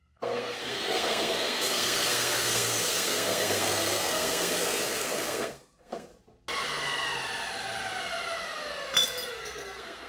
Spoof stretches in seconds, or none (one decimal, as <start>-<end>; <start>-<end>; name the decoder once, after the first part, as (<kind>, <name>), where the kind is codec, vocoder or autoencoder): 0.0-6.1 (codec, SNAC); 9.3-10.1